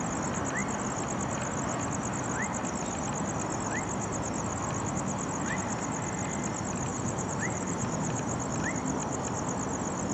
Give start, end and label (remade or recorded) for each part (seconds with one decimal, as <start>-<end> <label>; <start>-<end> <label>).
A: 0.0-6.9 recorded; 6.9-8.4 remade; 8.4-10.1 recorded

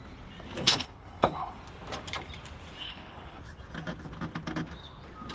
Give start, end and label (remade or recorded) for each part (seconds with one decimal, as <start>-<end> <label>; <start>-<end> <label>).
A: 0.0-0.6 recorded; 0.6-1.6 remade; 1.6-2.8 recorded; 2.8-3.4 remade; 3.4-5.3 recorded

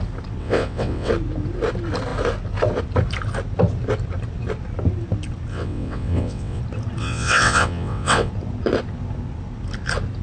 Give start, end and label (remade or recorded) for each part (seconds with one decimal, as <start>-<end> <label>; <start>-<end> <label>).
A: 0.0-0.4 recorded; 0.4-1.1 remade; 1.1-5.5 recorded; 5.5-6.6 remade; 6.6-7.0 recorded; 7.0-8.3 remade; 8.3-10.2 recorded

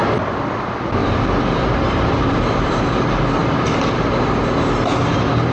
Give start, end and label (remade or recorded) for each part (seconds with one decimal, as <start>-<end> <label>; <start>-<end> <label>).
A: 0.0-1.0 recorded; 1.0-2.8 remade; 2.8-5.5 recorded

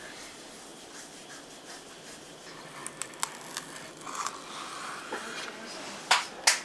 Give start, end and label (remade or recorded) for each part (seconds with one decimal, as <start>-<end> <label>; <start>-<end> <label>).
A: 0.0-0.7 recorded; 0.7-1.3 remade; 1.3-6.6 recorded

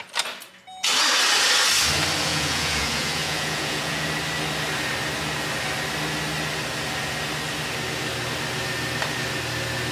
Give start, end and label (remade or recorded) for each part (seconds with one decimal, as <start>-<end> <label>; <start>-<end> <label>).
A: 0.0-2.3 recorded; 2.3-4.1 remade; 4.1-9.9 recorded

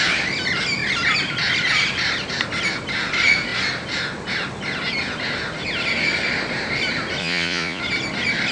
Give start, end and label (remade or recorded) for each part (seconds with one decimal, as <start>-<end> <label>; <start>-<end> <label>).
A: 0.0-7.2 recorded; 7.2-7.8 remade; 7.8-8.5 recorded

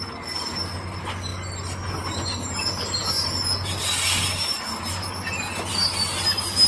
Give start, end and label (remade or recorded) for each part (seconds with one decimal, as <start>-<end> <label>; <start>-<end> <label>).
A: 0.0-6.7 recorded